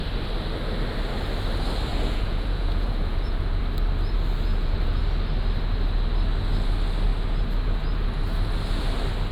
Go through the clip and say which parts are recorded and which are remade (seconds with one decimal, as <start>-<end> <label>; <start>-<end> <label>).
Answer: 0.0-1.9 recorded; 1.9-3.6 remade; 3.6-4.5 recorded; 4.5-5.0 remade; 5.0-9.3 recorded

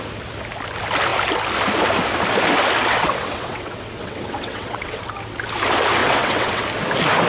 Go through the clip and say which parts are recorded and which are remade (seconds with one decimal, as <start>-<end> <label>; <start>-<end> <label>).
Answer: 0.0-2.9 recorded; 2.9-5.0 remade; 5.0-6.0 recorded; 6.0-6.6 remade; 6.6-7.3 recorded

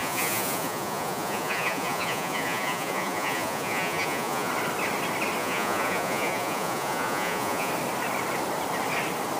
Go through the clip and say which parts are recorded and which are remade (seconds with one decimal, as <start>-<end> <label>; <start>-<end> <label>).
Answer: 0.0-4.5 remade; 4.5-5.4 recorded; 5.4-7.7 remade; 7.7-9.4 recorded

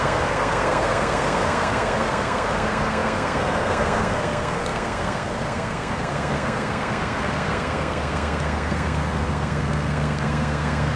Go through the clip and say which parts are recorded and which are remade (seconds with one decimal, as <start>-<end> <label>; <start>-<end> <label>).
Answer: 0.0-11.0 remade

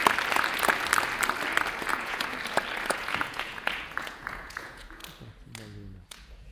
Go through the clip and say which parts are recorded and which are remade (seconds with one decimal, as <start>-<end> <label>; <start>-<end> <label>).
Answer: 0.0-1.9 recorded; 1.9-2.3 remade; 2.3-2.9 recorded; 2.9-5.0 remade; 5.0-6.1 recorded; 6.1-6.5 remade

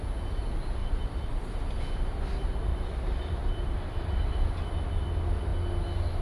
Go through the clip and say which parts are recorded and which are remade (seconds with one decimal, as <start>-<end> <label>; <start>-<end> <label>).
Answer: 0.0-0.8 recorded; 0.8-1.3 remade; 1.3-2.7 recorded; 2.7-4.5 remade; 4.5-6.2 recorded